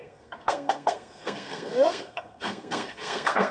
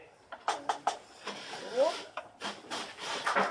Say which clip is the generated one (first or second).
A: first